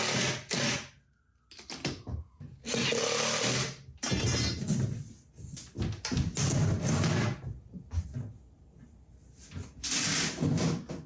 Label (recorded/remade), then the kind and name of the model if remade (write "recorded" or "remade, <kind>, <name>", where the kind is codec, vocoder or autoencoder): recorded